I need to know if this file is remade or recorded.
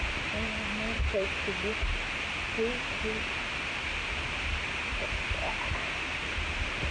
recorded